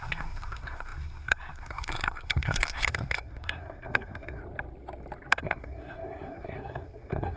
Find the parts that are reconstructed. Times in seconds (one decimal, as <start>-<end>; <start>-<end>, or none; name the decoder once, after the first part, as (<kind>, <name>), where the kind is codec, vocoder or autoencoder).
0.0-4.4 (codec, SNAC); 5.3-7.4